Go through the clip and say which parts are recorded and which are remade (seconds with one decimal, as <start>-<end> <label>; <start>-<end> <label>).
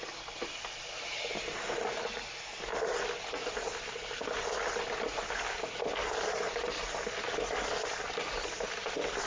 0.0-9.3 recorded